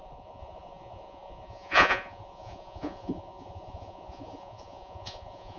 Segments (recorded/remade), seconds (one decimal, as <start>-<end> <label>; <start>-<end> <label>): 0.0-5.6 remade